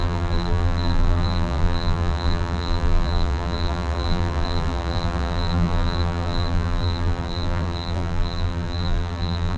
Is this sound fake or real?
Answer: fake